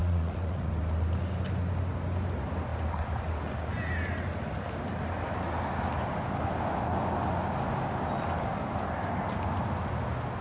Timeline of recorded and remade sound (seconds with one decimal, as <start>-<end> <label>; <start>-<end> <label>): 0.0-0.7 remade; 0.7-10.4 recorded